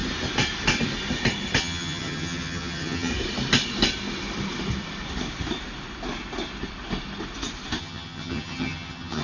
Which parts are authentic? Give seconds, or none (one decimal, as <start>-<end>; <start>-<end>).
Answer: 0.0-1.6; 3.1-7.8